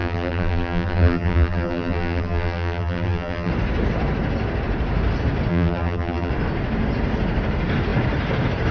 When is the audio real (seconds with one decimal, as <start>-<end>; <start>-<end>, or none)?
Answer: 3.5-5.5; 6.3-8.7